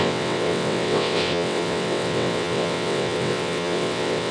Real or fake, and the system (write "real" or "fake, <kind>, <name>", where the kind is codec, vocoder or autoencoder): fake, vocoder, WaveNeXt